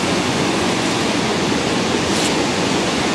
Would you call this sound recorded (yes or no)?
no